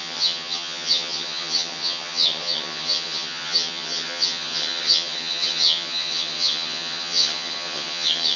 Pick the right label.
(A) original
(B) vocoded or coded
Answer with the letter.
B